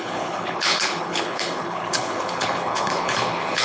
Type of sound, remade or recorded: remade